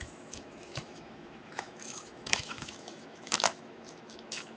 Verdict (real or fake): fake